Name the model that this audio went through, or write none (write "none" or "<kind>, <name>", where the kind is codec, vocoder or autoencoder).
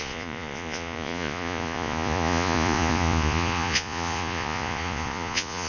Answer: vocoder, Vocos